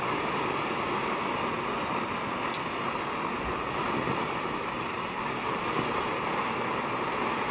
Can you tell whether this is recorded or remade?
recorded